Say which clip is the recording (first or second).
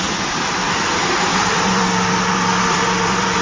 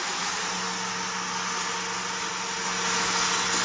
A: second